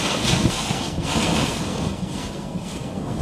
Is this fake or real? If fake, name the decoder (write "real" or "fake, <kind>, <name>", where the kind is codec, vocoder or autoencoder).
fake, codec, SNAC